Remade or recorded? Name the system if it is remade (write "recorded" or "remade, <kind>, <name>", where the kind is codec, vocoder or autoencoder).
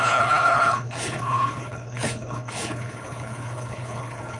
remade, codec, HILCodec